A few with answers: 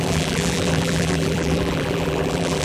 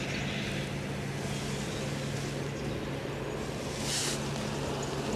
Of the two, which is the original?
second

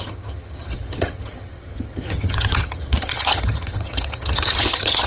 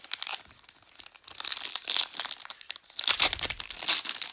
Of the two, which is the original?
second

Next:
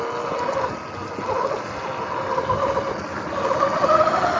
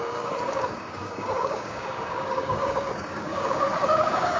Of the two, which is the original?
first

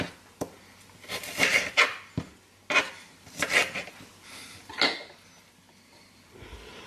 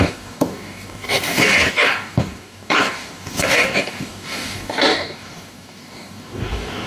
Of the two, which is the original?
first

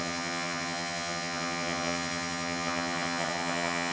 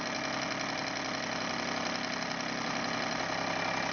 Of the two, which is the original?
second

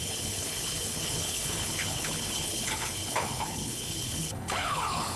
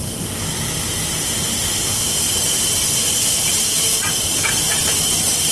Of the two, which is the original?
second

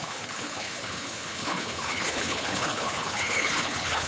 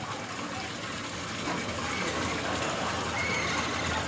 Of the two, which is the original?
second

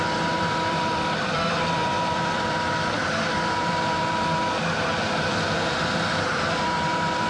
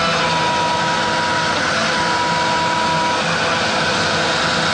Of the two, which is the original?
second